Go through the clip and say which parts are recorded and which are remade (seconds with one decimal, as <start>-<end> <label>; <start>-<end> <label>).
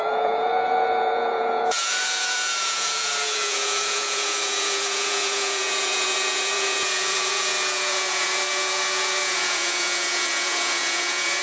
0.0-11.4 remade